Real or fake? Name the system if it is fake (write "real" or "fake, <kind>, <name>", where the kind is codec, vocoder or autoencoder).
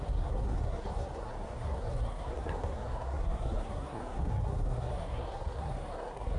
fake, codec, SNAC